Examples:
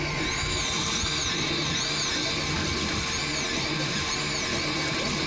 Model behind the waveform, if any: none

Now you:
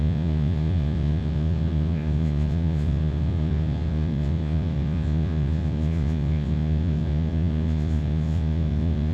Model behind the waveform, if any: vocoder, Vocos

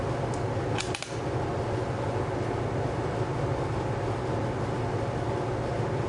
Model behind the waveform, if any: none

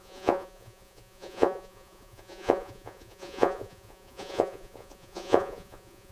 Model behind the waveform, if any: vocoder, Vocos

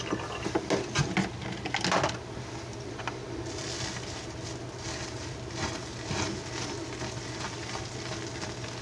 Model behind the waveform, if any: none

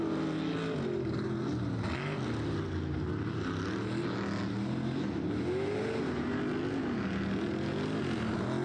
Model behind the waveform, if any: none